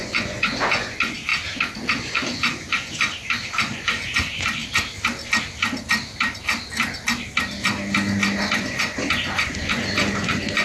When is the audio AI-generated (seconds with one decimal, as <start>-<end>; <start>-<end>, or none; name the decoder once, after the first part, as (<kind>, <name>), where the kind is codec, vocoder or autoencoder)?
0.0-1.3 (vocoder, Vocos); 2.0-4.6; 8.4-10.6